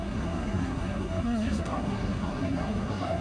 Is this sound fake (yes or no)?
yes